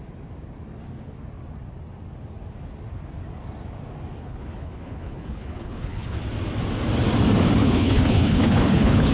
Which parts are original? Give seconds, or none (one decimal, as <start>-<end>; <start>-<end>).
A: 0.0-4.2; 6.2-7.6